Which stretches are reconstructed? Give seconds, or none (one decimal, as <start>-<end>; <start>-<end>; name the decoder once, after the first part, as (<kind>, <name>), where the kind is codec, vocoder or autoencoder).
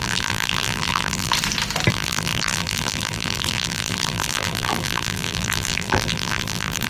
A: 0.0-1.3 (vocoder, BigVGAN v2); 1.9-6.9